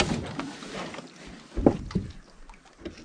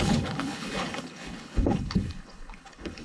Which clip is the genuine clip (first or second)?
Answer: first